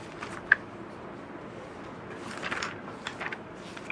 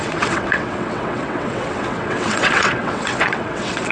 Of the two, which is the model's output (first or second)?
second